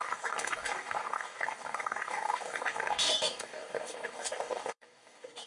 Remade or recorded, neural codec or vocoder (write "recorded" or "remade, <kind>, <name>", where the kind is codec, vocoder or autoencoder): remade, codec, DAC